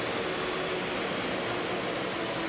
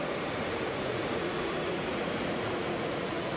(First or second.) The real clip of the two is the first